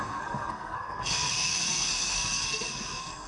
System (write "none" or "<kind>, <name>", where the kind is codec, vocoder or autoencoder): codec, SNAC